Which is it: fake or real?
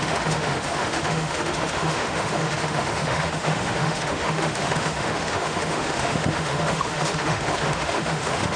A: fake